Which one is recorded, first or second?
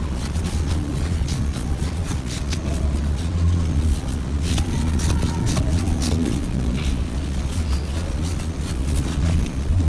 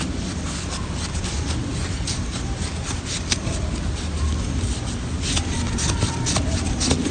second